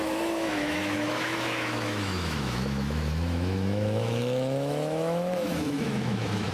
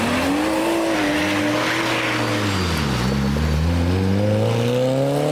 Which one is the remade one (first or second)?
first